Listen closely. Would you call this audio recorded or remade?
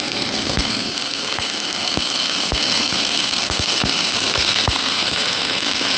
remade